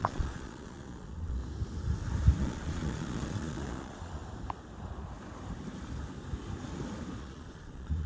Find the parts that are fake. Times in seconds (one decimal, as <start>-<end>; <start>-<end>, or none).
0.0-1.4; 2.4-4.2; 7.2-8.1